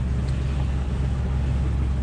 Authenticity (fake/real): real